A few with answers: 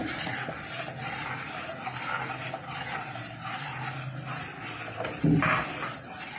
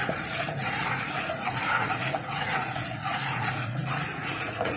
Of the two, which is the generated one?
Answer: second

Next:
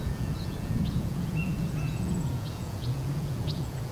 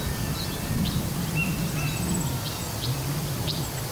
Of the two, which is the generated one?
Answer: first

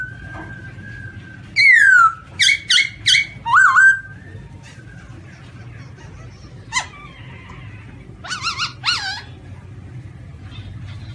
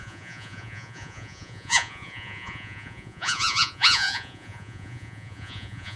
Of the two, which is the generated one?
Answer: second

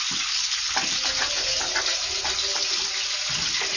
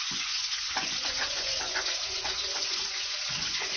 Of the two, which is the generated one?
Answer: second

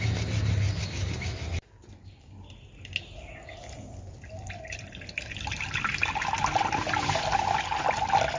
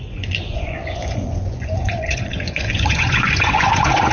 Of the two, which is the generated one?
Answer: second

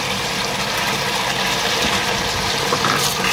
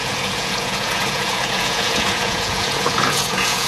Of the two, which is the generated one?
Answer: second